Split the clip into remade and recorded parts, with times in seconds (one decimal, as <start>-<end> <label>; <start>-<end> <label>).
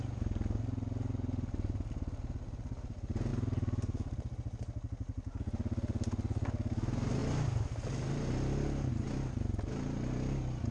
0.0-10.7 recorded